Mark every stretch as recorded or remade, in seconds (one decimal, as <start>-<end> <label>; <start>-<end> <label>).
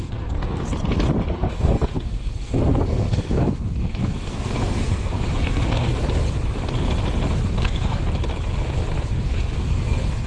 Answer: 0.0-0.7 remade; 0.7-1.3 recorded; 1.3-5.9 remade; 5.9-7.6 recorded; 7.6-8.0 remade; 8.0-9.2 recorded; 9.2-10.3 remade